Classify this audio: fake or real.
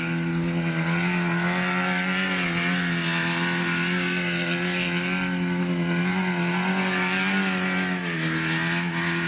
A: real